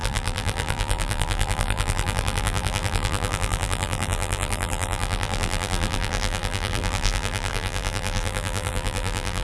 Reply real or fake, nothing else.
fake